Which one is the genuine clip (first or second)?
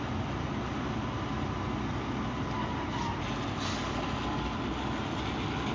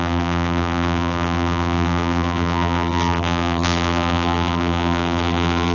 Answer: first